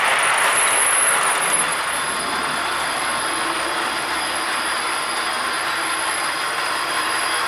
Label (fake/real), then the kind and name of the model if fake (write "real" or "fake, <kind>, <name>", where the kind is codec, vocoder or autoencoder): real